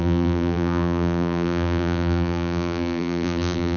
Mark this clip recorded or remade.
remade